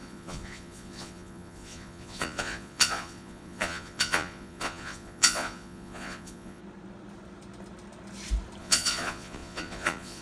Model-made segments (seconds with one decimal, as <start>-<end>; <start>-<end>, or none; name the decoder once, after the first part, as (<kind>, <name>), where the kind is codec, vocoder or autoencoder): 0.0-6.6 (vocoder, Vocos); 8.6-10.2